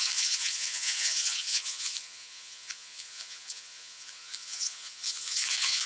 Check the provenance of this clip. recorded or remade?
remade